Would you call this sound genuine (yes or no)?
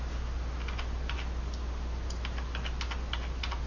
yes